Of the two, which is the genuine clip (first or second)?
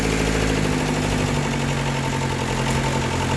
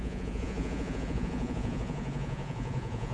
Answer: first